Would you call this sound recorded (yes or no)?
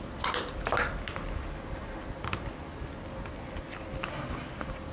yes